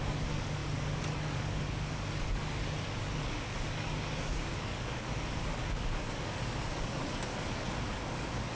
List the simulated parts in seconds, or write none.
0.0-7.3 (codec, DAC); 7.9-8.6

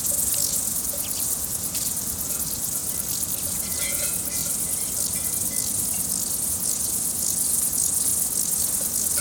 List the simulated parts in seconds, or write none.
0.0-2.8 (vocoder, Vocos); 3.5-4.4; 6.5-8.1

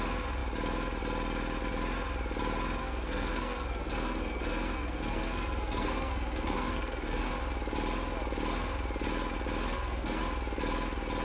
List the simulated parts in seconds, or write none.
2.8-7.3 (codec, SNAC); 9.7-10.2

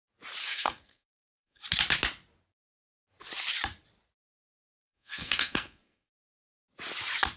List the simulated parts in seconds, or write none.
0.4-1.6 (codec, SNAC); 4.8-6.1

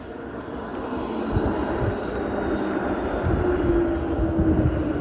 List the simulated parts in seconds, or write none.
none